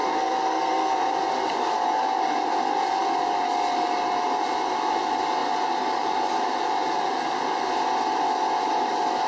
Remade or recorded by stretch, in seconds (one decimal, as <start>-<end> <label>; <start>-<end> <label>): 0.0-1.1 remade; 1.1-9.3 recorded